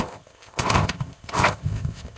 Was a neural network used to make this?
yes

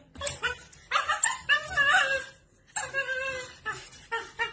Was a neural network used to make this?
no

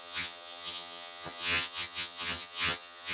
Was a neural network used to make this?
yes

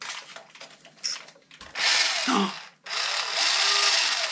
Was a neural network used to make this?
no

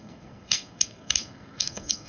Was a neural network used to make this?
yes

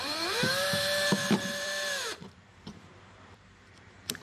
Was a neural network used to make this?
yes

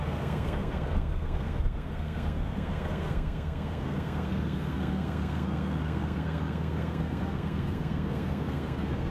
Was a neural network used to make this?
yes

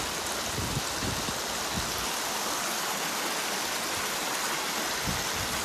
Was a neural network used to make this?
no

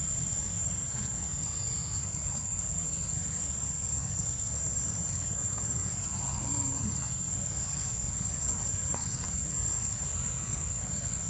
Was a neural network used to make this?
yes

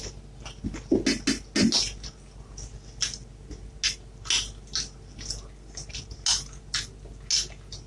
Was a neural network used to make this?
no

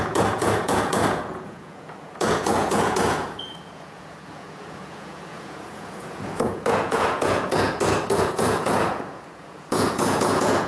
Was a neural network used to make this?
yes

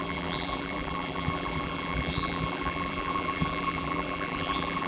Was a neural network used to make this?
yes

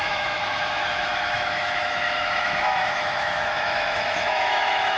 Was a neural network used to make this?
yes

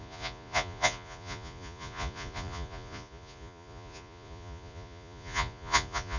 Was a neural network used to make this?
yes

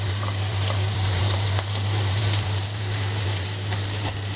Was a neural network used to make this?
yes